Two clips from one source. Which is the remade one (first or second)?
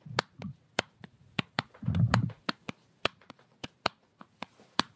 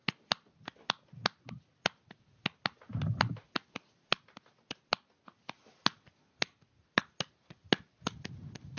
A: first